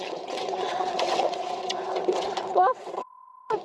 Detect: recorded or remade remade